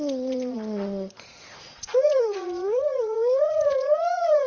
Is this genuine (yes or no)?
no